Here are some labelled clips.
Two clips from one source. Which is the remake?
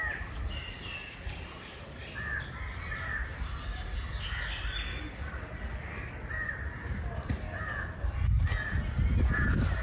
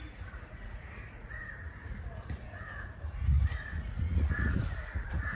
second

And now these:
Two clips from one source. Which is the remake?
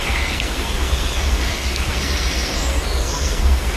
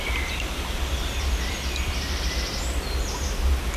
first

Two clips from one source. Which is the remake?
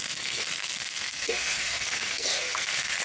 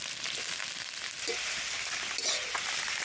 first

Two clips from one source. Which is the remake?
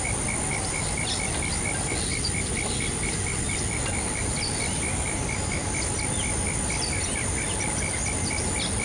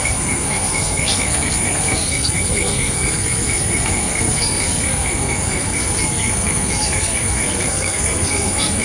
second